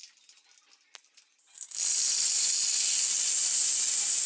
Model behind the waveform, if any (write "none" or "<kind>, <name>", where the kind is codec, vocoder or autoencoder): none